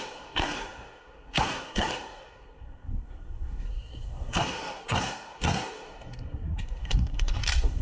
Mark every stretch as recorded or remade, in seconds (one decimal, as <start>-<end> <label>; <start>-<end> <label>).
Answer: 0.0-7.8 remade